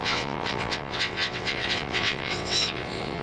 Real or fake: fake